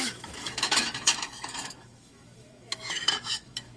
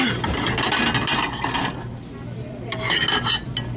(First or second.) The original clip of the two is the second